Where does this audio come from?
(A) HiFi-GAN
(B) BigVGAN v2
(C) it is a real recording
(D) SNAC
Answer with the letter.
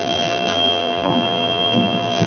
B